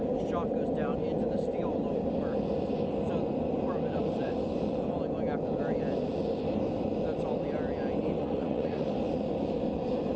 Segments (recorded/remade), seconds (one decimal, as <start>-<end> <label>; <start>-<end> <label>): 0.0-8.2 recorded; 8.2-8.9 remade; 8.9-10.2 recorded